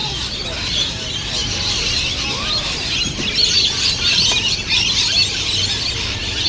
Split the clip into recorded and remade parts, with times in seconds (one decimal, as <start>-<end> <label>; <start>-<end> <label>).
0.0-6.5 recorded

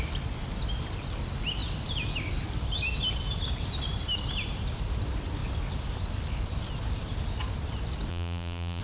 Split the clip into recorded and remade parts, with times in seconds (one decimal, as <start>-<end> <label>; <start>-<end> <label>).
0.0-8.1 recorded; 8.1-8.8 remade

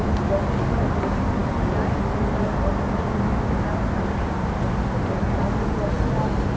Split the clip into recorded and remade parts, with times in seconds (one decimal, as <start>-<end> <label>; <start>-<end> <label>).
0.0-6.6 recorded

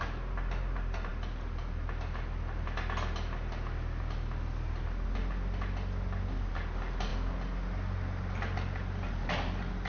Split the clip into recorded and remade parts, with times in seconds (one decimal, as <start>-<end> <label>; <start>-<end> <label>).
0.0-9.9 recorded

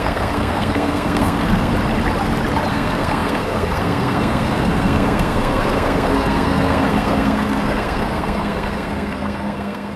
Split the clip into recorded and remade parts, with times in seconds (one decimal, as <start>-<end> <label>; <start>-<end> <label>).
0.0-1.7 remade; 1.7-2.7 recorded; 2.7-10.0 remade

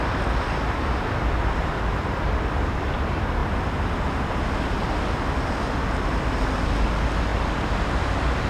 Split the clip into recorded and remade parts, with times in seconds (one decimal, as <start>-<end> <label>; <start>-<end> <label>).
0.0-8.5 recorded